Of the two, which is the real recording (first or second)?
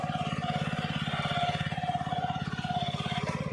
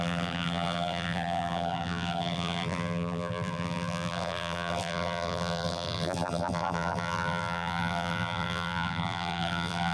first